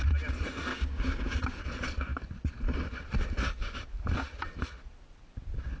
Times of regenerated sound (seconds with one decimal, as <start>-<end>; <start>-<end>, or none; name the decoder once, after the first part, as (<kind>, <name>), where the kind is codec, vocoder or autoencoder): 0.7-1.6 (codec, DAC)